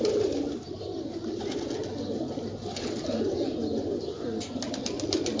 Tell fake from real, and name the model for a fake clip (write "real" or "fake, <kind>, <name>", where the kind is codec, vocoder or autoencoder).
real